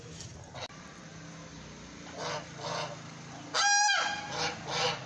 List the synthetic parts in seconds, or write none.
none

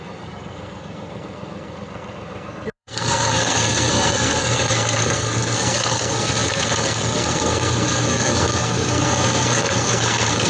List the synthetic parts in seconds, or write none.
0.0-10.5

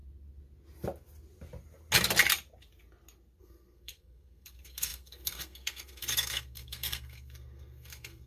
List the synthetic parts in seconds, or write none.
3.4-8.3

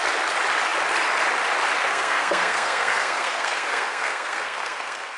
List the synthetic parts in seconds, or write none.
1.8-5.2

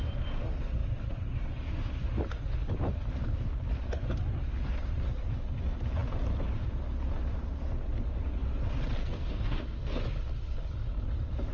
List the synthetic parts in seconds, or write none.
9.0-10.0